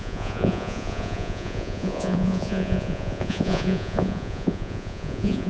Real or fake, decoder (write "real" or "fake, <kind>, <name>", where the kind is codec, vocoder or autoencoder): fake, vocoder, Vocos